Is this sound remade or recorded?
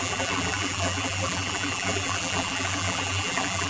remade